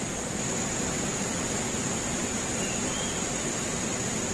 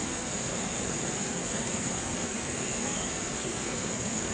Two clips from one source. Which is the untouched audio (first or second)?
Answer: first